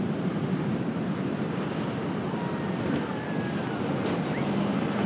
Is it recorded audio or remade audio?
recorded